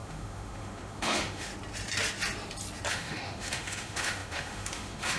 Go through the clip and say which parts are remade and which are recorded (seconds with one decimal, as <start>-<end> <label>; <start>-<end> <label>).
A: 0.0-1.5 remade; 1.5-2.9 recorded; 2.9-5.2 remade